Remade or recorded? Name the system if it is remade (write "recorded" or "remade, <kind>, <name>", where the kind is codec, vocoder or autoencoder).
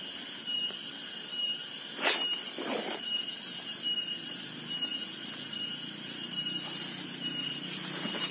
recorded